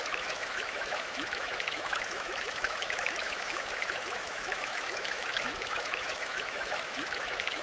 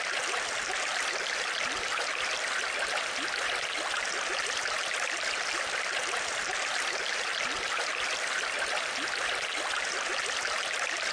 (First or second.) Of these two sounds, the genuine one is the second